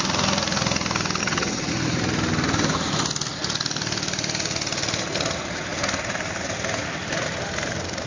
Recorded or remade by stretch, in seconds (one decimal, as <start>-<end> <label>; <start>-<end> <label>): 0.0-1.2 recorded; 1.2-1.7 remade; 1.7-8.1 recorded